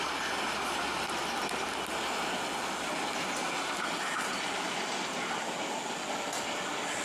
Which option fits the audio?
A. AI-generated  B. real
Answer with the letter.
B